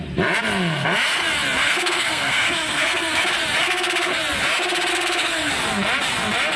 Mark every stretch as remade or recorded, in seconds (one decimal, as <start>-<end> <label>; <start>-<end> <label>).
0.0-1.6 recorded; 1.6-3.2 remade; 3.2-3.6 recorded; 3.6-4.1 remade; 4.1-4.9 recorded; 4.9-5.5 remade; 5.5-6.6 recorded